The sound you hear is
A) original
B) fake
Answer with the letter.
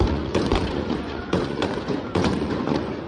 B